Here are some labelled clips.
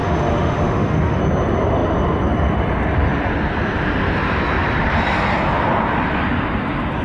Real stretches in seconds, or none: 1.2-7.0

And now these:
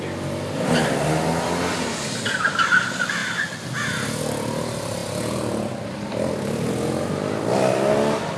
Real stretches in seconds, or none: 0.0-8.4

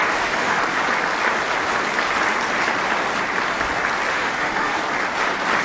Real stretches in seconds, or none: 0.6-4.1; 4.8-5.6

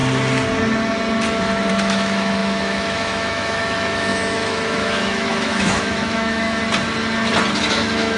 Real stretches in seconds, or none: 0.0-1.7; 6.6-7.7

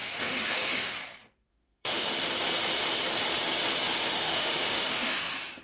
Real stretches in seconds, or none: 1.0-1.5; 2.1-4.0